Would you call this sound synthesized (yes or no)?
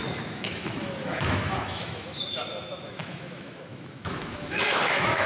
yes